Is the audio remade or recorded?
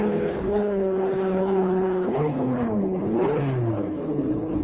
remade